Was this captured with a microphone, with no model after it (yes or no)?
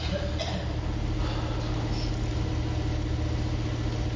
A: yes